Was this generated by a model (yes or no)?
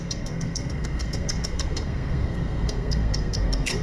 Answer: yes